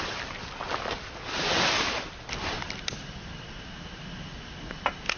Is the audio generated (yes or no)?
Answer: no